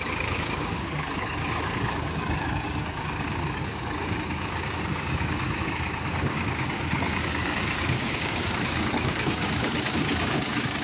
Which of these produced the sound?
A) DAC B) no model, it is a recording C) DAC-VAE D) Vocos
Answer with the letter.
A